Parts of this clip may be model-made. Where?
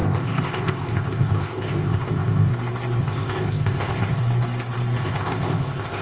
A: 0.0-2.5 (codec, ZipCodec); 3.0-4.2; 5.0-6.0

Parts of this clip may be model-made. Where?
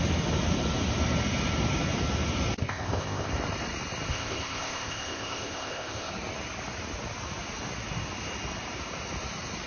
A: 2.6-3.3 (codec, ZipCodec); 4.1-6.1